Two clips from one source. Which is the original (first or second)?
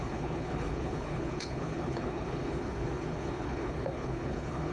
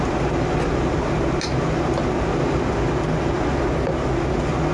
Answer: second